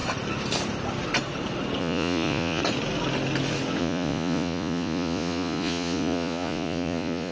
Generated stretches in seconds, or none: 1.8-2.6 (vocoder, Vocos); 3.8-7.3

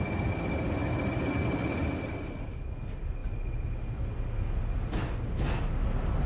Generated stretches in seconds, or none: none

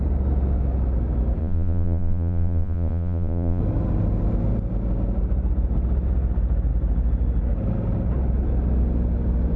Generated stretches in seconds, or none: 1.4-3.6 (vocoder, Vocos)

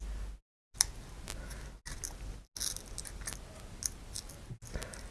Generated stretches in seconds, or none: none

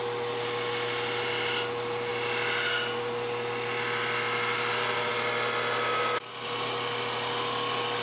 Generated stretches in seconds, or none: none

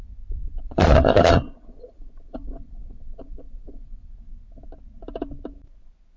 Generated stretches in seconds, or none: 0.4-4.1 (vocoder, Vocos)

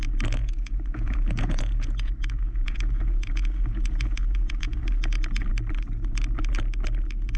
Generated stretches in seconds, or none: 0.4-4.8 (vocoder, Vocos)

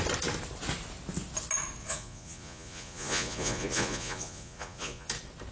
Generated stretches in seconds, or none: 1.8-5.1 (vocoder, Vocos)